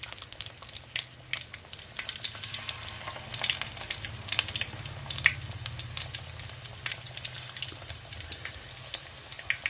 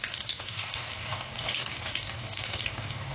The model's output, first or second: second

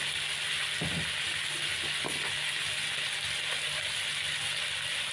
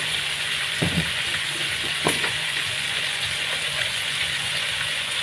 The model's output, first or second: second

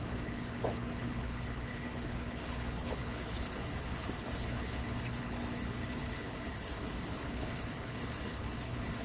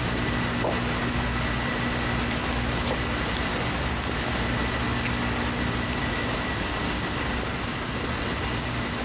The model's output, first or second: first